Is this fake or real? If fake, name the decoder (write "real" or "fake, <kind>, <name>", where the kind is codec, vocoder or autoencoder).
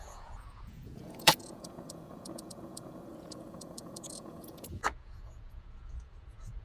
fake, vocoder, Vocos